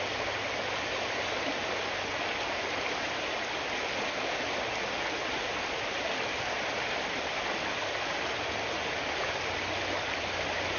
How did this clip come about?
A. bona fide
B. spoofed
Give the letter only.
A